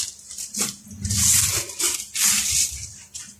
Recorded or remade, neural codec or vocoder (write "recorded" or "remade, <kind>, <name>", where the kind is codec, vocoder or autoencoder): recorded